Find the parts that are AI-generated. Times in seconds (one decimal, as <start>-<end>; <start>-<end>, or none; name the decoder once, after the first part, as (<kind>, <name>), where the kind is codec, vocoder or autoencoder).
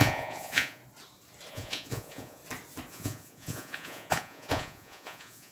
0.0-0.8 (vocoder, Vocos); 1.5-2.4; 2.9-5.5